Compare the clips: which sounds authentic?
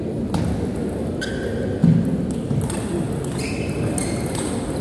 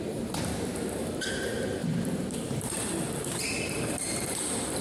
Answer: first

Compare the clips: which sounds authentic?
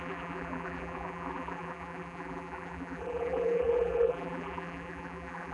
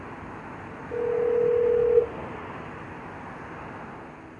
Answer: second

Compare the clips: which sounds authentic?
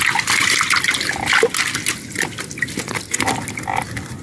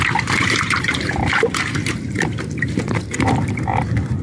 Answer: first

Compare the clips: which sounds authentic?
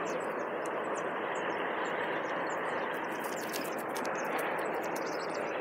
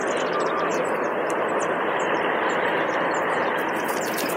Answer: first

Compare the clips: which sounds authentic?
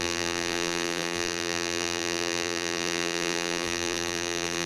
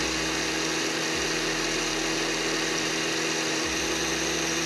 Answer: second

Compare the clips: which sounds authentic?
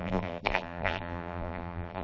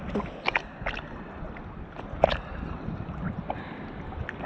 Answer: second